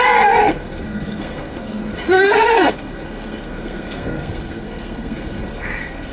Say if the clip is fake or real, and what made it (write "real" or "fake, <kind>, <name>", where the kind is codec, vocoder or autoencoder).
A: fake, codec, SNAC